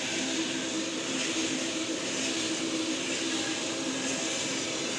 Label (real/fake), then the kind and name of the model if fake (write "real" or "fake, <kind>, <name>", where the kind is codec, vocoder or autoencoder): real